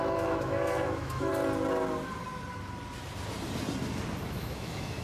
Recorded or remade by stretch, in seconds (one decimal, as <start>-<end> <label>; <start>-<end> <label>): 0.0-1.3 remade; 1.3-4.3 recorded; 4.3-5.0 remade